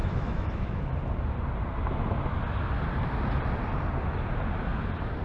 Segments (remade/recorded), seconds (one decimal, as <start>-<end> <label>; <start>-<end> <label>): 0.0-0.8 remade; 0.8-5.2 recorded